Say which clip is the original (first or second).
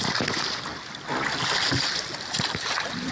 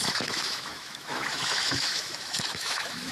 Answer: first